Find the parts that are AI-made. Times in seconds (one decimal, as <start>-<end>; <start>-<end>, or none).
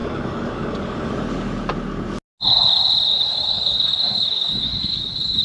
0.0-1.1; 3.1-5.4